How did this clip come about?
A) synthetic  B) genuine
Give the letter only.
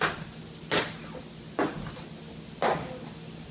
B